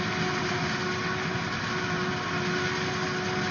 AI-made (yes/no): no